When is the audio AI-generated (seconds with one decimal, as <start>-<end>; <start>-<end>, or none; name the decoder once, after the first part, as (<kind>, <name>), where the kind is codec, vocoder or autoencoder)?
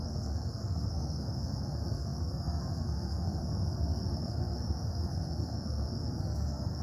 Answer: 0.0-6.8 (codec, SNAC)